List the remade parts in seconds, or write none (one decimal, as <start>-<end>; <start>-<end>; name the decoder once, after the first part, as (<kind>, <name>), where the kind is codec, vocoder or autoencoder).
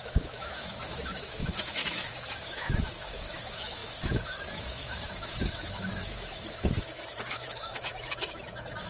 0.0-8.9 (autoencoder, DAC-VAE)